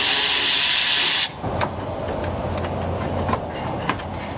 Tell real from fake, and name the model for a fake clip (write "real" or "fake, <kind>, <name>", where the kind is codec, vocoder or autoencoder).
real